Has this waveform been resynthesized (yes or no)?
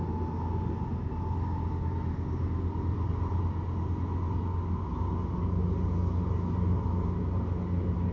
no